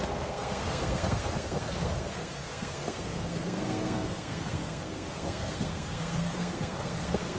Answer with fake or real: fake